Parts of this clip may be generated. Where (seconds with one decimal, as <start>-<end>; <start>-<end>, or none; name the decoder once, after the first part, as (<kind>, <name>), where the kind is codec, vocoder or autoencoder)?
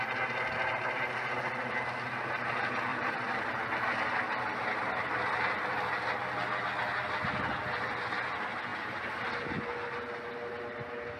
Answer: 2.9-3.5 (vocoder, BigVGAN v2)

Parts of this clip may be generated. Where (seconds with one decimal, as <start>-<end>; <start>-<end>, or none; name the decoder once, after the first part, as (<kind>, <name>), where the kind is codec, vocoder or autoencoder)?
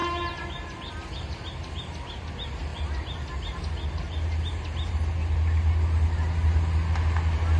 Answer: none